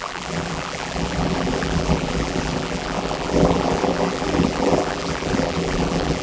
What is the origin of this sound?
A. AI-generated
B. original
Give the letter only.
A